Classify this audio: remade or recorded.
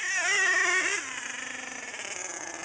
recorded